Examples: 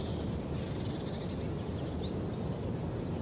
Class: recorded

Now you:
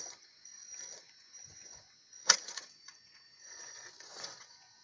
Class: remade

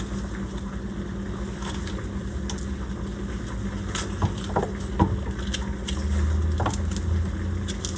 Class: recorded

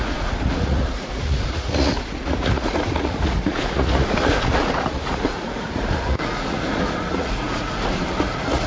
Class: remade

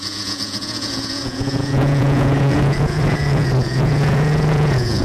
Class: remade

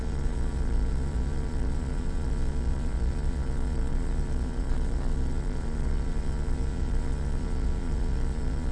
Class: remade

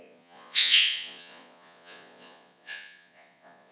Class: remade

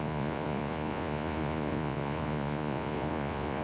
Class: remade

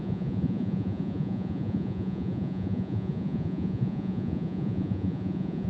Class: remade